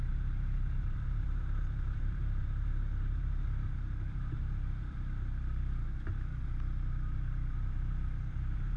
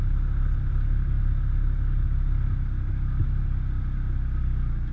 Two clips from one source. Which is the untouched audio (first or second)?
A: second